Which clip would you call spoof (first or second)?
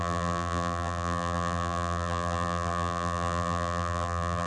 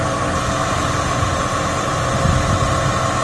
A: first